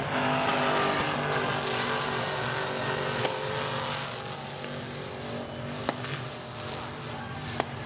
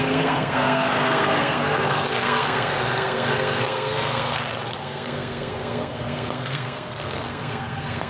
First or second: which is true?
first